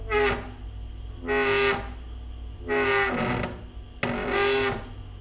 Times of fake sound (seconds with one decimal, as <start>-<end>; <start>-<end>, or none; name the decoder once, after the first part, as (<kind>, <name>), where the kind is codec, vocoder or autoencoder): none